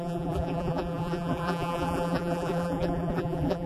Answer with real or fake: fake